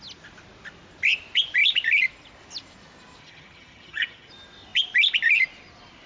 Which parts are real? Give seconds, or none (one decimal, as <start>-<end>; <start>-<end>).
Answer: 0.0-3.2; 4.3-6.1

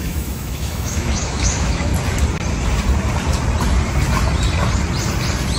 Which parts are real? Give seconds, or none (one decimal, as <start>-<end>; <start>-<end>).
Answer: 1.9-5.6

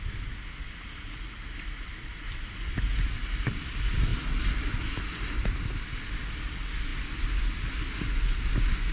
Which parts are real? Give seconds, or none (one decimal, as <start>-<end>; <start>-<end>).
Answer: 0.0-8.9

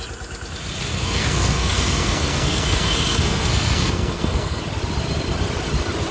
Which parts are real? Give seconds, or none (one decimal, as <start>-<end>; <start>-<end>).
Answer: 0.0-0.9; 4.6-6.1

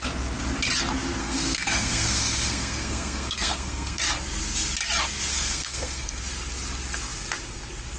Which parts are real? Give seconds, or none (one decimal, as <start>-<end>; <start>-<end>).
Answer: 0.0-1.2; 4.0-5.3; 6.2-8.0

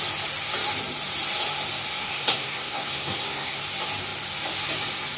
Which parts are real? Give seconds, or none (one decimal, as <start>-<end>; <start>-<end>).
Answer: 0.0-2.0; 3.6-5.2